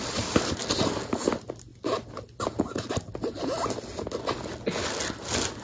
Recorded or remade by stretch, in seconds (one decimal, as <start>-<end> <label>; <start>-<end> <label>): 0.0-5.6 recorded